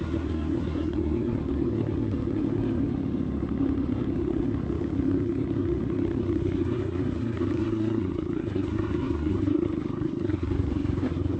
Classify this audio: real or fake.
fake